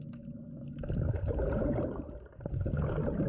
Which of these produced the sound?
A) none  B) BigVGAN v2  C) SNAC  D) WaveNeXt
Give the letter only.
A